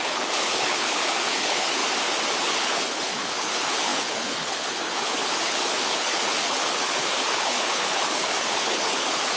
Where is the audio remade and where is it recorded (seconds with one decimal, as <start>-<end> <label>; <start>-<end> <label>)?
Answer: 0.0-1.8 remade; 1.8-2.4 recorded; 2.4-9.4 remade